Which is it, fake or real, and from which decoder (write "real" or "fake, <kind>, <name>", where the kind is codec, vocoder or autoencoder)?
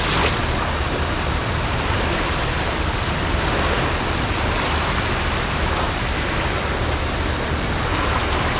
real